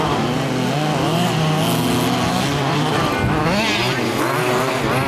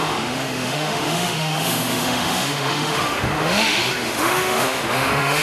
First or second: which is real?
first